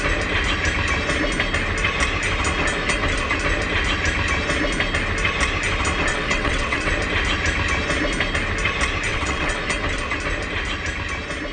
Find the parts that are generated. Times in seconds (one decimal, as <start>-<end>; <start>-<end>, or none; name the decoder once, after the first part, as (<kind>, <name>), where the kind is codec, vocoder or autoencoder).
6.1-6.9 (vocoder, WaveNeXt); 9.1-9.6